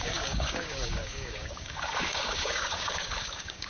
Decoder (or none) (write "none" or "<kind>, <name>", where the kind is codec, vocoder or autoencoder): codec, DAC